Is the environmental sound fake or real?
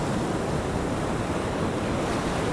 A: real